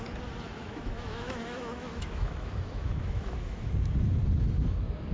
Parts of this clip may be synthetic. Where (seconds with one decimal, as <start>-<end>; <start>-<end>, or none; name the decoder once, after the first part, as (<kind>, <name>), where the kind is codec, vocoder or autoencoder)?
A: 0.6-3.7 (autoencoder, DAC-VAE)